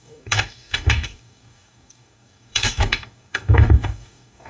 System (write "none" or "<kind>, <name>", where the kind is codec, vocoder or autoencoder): codec, DAC